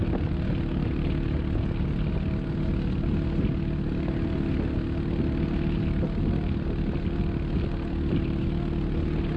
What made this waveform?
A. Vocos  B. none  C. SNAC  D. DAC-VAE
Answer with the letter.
B